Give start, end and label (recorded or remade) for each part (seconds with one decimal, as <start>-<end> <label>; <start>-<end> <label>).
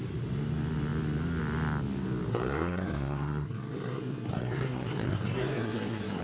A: 0.0-2.3 recorded; 2.3-6.2 remade